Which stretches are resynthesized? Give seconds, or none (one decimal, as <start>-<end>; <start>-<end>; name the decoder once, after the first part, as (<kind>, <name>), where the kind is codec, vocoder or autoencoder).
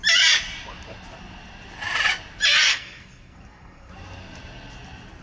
2.7-3.9 (codec, SNAC)